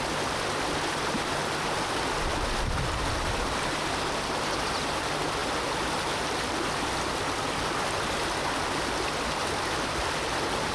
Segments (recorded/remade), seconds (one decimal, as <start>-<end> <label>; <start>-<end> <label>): 0.0-10.7 recorded